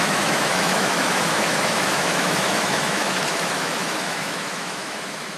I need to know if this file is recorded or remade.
remade